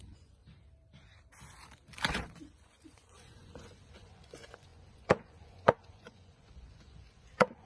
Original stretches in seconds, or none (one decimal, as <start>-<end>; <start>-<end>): 0.4-2.1